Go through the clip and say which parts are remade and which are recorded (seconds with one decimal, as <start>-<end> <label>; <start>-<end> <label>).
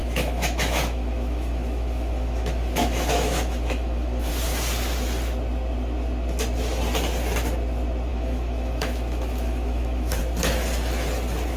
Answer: 0.0-4.3 remade; 4.3-8.1 recorded; 8.1-10.2 remade; 10.2-11.6 recorded